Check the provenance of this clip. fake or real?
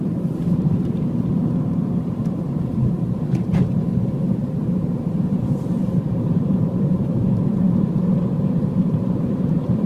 fake